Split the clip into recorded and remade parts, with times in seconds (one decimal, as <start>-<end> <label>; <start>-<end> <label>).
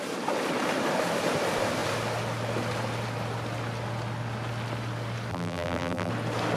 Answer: 0.0-5.3 recorded; 5.3-6.1 remade; 6.1-6.6 recorded